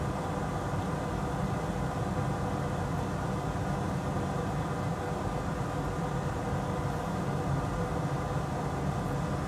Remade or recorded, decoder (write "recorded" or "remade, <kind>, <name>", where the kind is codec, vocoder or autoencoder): recorded